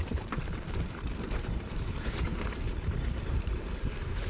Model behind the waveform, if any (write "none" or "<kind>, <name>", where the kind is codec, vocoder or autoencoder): vocoder, BigVGAN v2